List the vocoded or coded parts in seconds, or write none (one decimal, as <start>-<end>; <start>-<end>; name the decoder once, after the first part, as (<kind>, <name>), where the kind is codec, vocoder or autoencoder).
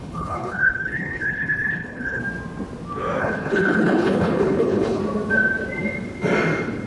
0.0-2.2 (codec, HILCodec); 3.2-5.0